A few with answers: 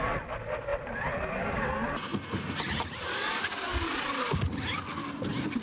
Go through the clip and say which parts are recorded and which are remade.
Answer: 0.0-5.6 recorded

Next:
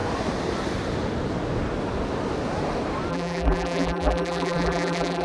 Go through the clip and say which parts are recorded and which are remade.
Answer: 0.0-3.1 recorded; 3.1-5.2 remade

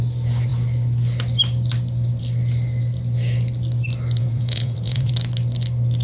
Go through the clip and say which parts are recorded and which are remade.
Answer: 0.0-4.2 recorded; 4.2-5.1 remade; 5.1-6.0 recorded

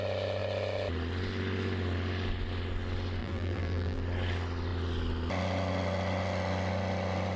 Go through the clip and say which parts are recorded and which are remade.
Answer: 0.0-3.2 recorded; 3.2-4.0 remade; 4.0-7.4 recorded

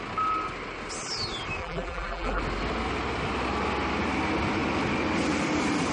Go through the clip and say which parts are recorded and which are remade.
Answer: 0.0-1.6 recorded; 1.6-2.4 remade; 2.4-5.9 recorded